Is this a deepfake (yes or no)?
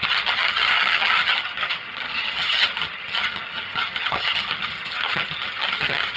yes